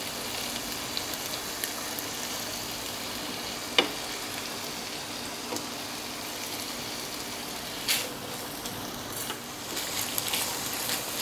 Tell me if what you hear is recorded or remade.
recorded